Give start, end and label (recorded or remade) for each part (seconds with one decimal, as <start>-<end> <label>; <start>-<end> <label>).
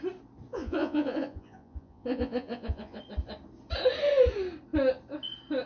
0.0-0.5 recorded; 0.5-3.0 remade; 3.0-5.7 recorded